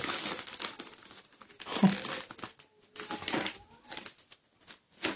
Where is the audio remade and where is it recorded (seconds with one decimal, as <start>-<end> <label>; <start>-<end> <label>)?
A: 0.0-5.2 recorded